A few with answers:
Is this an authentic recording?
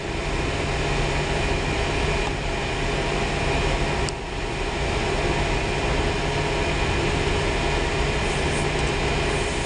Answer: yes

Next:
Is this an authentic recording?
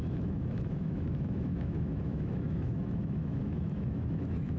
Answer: no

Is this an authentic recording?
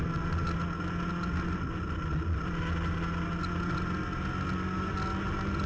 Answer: yes